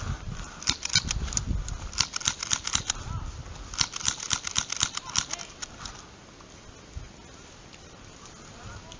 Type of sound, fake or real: real